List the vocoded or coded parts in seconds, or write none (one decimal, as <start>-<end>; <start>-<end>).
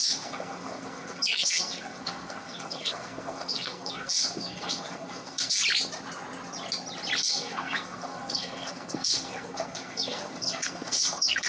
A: 0.0-5.6; 7.2-11.5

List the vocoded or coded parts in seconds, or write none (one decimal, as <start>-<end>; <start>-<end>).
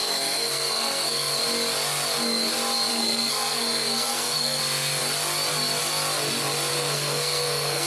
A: 0.0-1.4; 2.9-4.6; 6.7-7.9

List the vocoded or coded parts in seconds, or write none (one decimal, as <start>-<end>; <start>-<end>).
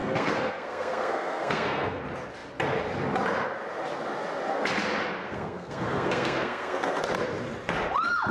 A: 0.0-2.0; 5.2-7.0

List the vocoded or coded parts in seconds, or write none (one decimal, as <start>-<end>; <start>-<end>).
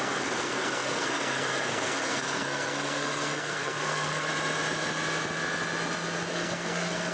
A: 0.0-4.3; 6.3-7.1